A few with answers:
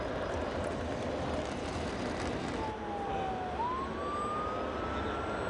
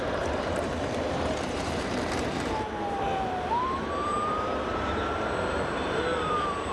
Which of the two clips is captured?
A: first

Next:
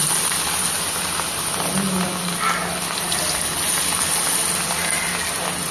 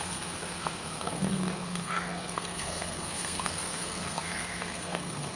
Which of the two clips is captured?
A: first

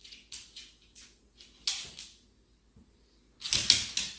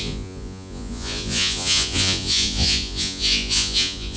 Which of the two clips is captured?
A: first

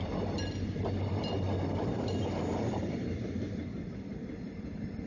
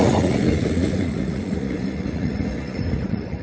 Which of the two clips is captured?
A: first